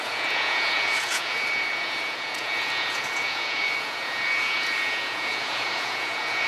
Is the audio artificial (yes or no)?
yes